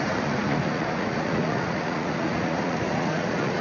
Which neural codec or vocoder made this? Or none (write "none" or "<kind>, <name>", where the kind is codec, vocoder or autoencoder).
vocoder, Vocos